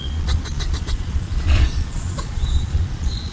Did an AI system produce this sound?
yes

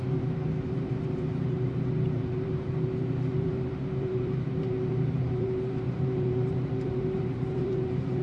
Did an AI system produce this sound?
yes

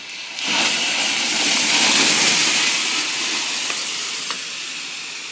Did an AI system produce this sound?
no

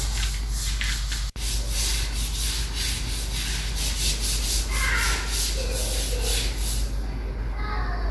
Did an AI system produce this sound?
no